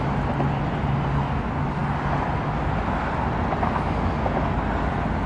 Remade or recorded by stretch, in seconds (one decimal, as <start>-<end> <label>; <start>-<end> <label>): 0.0-5.3 recorded